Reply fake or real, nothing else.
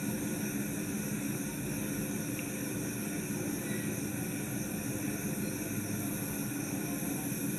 real